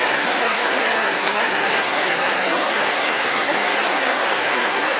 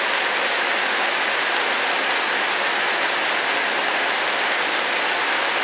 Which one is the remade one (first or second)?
first